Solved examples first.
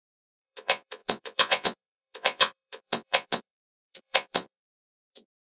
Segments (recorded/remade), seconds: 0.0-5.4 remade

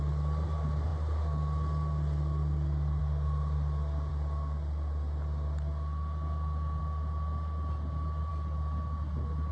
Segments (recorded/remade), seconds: 0.0-9.5 recorded

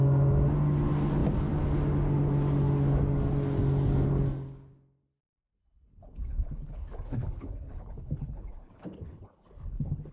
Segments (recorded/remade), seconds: 0.0-5.6 recorded; 5.6-10.1 remade

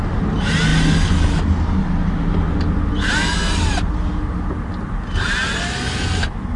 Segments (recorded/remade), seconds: 0.0-6.6 recorded

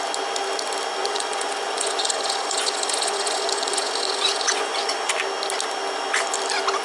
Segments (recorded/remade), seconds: 0.0-1.0 recorded; 1.0-5.1 remade; 5.1-6.8 recorded

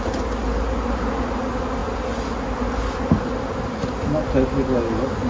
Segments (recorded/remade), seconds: 0.0-5.3 recorded